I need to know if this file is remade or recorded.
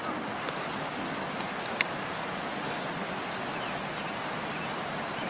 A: recorded